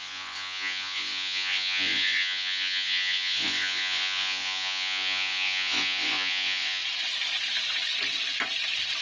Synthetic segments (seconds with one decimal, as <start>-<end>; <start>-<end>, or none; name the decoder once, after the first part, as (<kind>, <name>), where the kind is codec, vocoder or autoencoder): 0.0-6.8 (vocoder, Vocos)